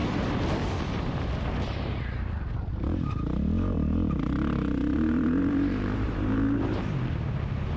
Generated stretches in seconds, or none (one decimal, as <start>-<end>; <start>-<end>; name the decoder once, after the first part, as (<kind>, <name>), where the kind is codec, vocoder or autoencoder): 2.7-7.8 (vocoder, BigVGAN v2)